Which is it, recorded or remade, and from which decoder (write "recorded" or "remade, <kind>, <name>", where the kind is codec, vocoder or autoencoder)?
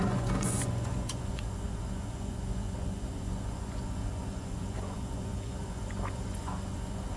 remade, vocoder, Vocos